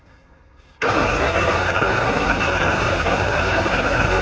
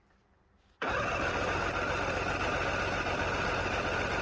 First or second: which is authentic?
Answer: second